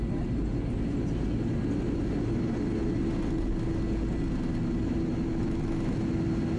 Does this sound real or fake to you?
real